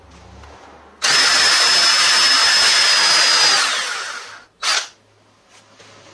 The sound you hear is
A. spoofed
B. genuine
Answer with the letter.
B